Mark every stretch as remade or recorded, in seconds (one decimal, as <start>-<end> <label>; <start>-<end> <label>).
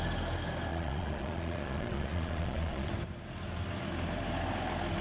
0.0-0.7 recorded; 0.7-2.9 remade; 2.9-5.0 recorded